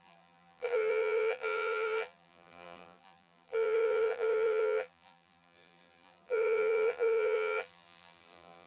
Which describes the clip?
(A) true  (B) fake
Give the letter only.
B